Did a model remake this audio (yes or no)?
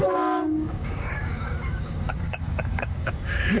yes